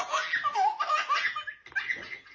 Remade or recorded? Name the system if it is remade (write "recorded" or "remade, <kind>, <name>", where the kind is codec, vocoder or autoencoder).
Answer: recorded